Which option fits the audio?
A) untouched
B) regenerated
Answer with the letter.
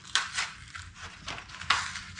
A